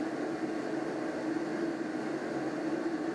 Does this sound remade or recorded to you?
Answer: recorded